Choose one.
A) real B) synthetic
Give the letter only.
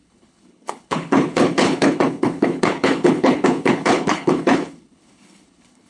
B